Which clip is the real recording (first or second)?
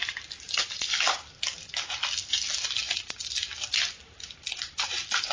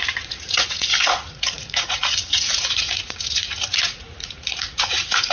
first